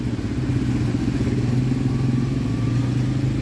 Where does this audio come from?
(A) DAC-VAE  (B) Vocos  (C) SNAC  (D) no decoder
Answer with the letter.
D